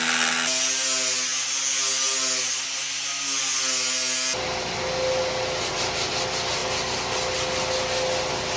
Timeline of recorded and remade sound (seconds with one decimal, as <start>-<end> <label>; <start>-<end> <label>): 0.0-8.6 recorded